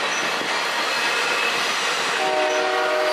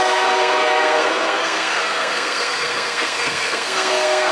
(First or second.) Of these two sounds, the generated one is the second